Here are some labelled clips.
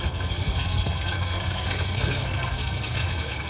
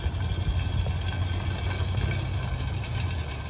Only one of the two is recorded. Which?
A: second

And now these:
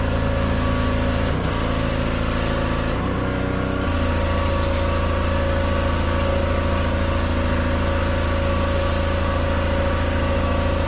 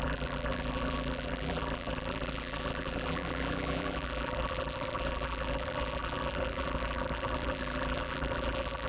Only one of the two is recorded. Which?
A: first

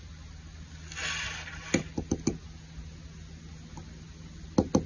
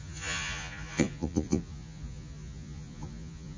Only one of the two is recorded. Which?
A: first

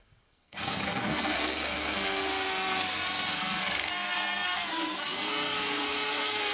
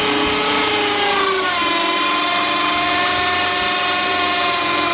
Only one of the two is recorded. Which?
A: second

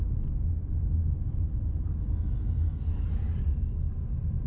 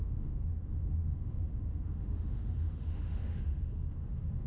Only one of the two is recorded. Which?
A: first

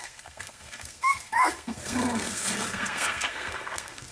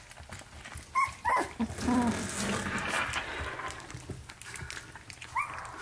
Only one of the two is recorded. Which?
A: second